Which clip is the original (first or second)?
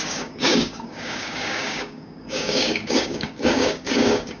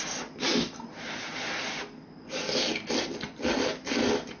second